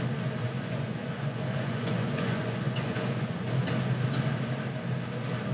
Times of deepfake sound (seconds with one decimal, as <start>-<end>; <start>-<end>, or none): 0.4-3.5